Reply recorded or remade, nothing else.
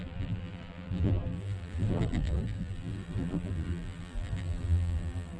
remade